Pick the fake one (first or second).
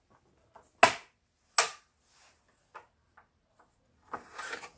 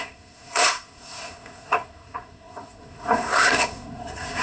second